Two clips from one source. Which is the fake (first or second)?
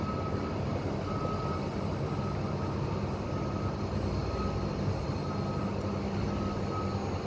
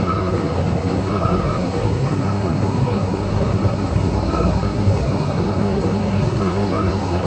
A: second